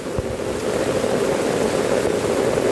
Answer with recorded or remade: recorded